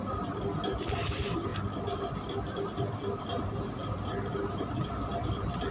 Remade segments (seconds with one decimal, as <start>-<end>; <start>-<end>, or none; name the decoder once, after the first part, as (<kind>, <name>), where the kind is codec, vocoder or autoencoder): none